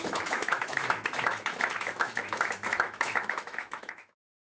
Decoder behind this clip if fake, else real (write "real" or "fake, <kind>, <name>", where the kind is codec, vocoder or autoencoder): fake, autoencoder, DAC-VAE